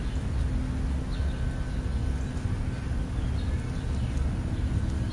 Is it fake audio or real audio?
real